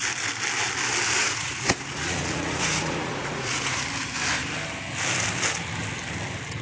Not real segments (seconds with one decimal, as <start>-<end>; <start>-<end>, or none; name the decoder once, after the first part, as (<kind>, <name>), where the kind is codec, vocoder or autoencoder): 1.2-3.8 (vocoder, Vocos)